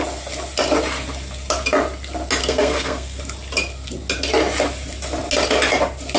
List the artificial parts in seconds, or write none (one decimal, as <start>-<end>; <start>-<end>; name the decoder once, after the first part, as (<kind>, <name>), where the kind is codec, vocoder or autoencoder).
2.4-3.2 (codec, SNAC)